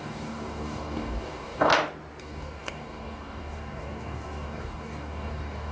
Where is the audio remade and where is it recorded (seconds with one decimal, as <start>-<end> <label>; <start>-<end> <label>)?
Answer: 0.0-1.7 remade; 1.7-2.2 recorded; 2.2-5.7 remade